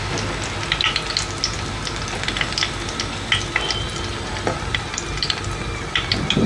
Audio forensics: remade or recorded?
recorded